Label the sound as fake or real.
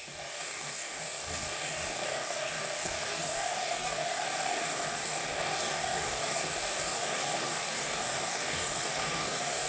fake